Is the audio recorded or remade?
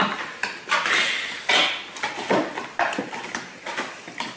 recorded